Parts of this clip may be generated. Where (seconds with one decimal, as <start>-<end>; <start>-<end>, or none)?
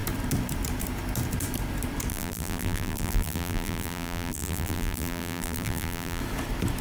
2.1-6.2